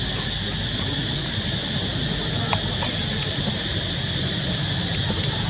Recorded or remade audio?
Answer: recorded